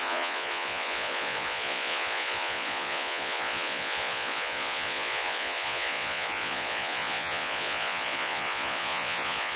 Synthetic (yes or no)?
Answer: yes